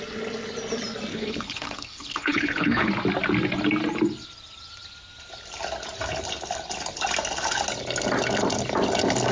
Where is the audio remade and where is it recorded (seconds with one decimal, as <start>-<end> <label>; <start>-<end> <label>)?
0.0-1.1 recorded; 1.1-2.9 remade; 2.9-9.3 recorded